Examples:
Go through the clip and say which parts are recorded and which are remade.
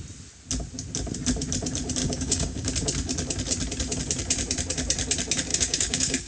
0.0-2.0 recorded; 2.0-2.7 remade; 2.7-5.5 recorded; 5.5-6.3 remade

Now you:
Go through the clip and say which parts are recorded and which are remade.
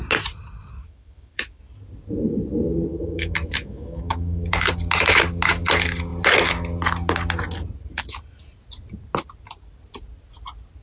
0.0-0.8 recorded; 0.8-1.6 remade; 1.6-2.9 recorded; 2.9-4.7 remade; 4.7-10.8 recorded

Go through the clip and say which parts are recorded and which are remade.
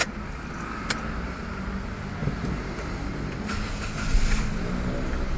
0.0-2.2 recorded; 2.2-3.7 remade; 3.7-5.4 recorded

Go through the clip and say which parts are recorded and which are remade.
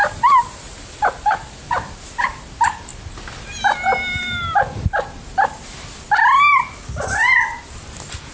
0.0-8.3 recorded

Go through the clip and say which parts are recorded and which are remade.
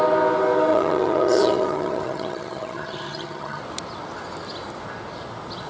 0.0-0.7 recorded; 0.7-3.6 remade; 3.6-5.7 recorded